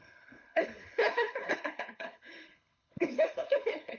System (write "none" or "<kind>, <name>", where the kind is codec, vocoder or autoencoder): codec, HILCodec